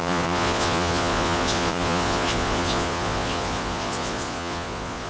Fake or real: fake